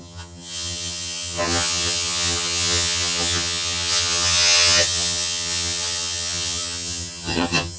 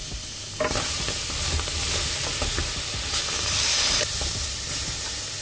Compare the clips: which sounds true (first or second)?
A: second